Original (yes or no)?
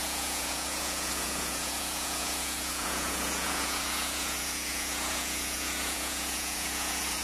no